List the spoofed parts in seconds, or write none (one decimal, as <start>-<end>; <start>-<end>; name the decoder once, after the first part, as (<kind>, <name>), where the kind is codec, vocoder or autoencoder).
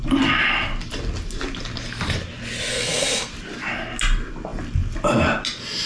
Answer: 2.7-3.3 (codec, SNAC)